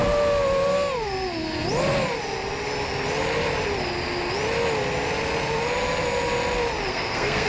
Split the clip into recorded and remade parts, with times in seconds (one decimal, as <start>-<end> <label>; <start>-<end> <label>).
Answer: 0.0-6.9 recorded; 6.9-7.5 remade